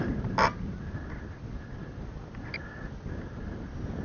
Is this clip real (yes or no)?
yes